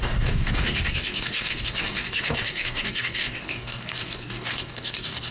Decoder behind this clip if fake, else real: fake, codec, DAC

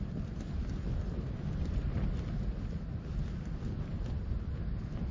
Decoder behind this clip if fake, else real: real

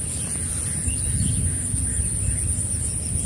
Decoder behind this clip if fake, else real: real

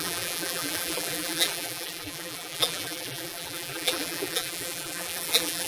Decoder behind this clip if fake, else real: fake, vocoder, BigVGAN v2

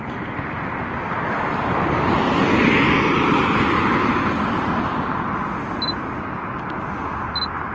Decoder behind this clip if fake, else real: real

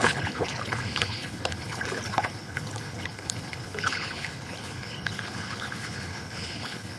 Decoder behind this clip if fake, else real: fake, codec, HILCodec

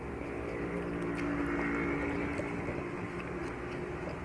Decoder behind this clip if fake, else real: real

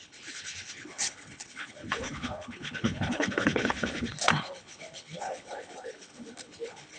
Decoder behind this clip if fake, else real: fake, codec, HILCodec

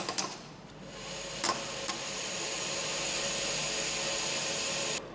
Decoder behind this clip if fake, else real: real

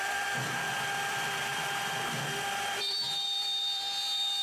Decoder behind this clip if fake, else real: fake, vocoder, BigVGAN v2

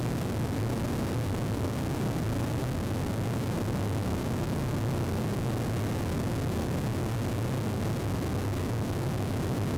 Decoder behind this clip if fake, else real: real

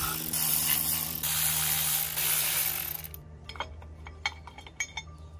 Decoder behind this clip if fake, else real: real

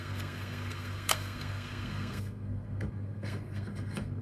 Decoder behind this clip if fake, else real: fake, codec, SNAC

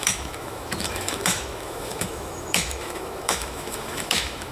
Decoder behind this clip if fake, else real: fake, autoencoder, DAC-VAE